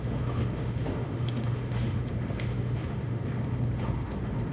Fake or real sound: fake